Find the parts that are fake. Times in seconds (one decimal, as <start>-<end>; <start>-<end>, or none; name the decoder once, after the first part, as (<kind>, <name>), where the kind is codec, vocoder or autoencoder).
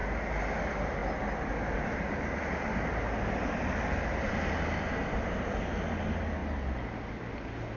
none